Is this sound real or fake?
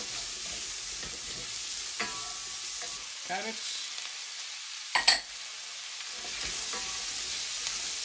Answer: real